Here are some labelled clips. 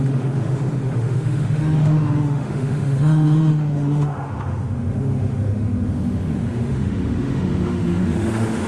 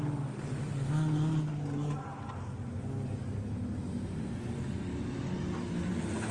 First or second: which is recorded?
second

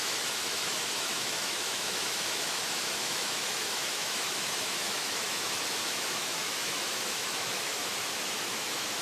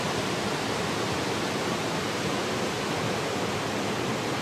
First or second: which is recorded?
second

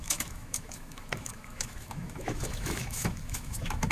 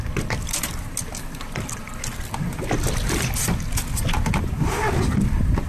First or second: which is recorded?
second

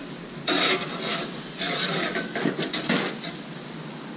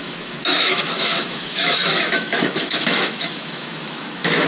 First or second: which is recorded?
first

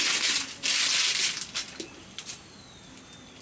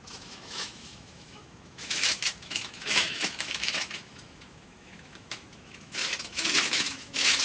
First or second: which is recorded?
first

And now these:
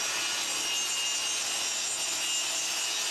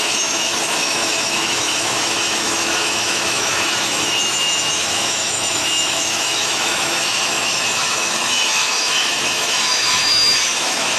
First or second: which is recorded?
first